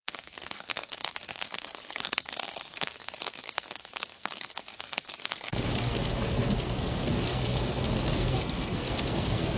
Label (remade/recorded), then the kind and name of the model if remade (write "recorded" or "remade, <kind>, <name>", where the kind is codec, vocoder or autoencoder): remade, codec, SNAC